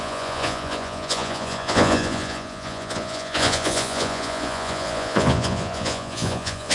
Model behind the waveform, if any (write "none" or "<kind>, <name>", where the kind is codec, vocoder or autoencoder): vocoder, Vocos